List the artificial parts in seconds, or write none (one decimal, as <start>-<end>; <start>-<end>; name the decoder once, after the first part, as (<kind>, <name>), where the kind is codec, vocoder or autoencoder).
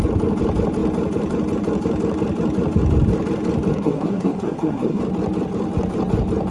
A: 3.7-5.0 (codec, SNAC)